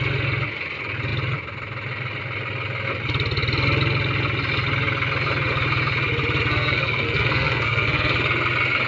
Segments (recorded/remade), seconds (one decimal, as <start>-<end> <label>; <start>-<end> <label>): 0.0-6.5 recorded; 6.5-8.1 remade; 8.1-8.9 recorded